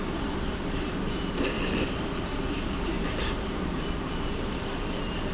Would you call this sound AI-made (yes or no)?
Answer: yes